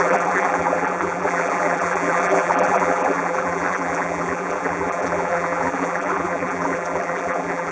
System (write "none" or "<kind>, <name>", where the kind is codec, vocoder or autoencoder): vocoder, BigVGAN v2